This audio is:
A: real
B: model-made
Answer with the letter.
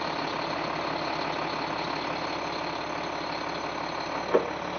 A